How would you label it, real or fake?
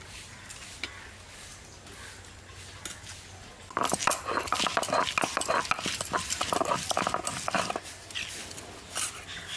real